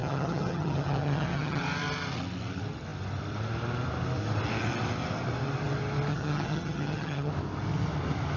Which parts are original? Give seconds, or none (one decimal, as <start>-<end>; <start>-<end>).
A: 1.6-6.1; 7.3-8.4